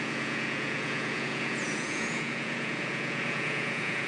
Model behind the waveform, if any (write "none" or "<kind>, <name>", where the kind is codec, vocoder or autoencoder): vocoder, Vocos